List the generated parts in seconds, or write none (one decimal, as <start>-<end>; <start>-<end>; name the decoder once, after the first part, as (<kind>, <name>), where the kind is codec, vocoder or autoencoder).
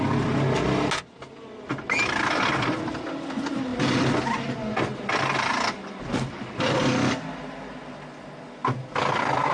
none